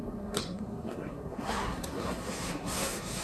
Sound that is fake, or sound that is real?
fake